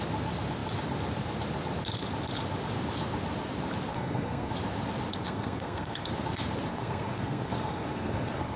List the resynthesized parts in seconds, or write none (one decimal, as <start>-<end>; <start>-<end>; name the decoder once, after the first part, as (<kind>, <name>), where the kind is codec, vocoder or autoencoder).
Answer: 3.9-4.5 (codec, SNAC); 5.1-6.1; 6.7-8.6